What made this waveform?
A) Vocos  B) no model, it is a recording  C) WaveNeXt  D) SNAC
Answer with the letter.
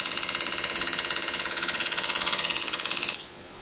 A